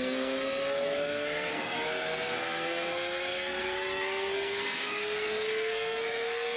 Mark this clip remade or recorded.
remade